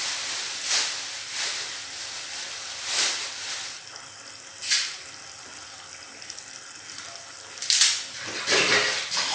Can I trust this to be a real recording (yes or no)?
yes